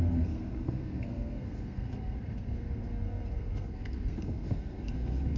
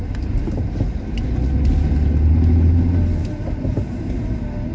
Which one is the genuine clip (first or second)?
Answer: second